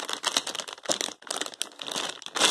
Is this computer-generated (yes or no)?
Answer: no